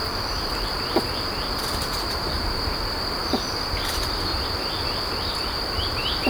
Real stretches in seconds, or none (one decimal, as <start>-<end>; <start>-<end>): 0.0-6.3